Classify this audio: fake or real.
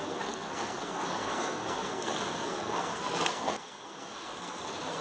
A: fake